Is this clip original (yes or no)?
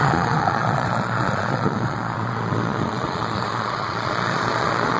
no